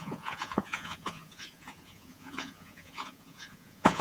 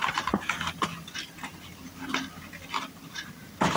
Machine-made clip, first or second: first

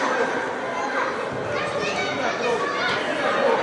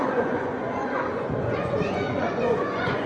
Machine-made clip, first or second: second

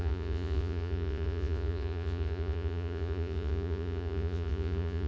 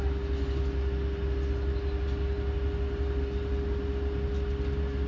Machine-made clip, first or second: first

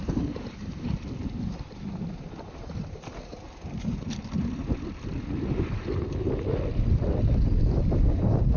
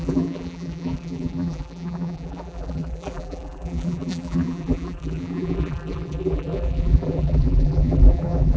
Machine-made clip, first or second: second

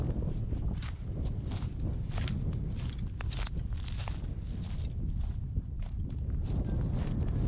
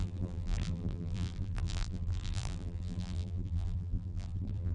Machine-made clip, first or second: second